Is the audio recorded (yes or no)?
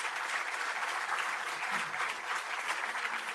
yes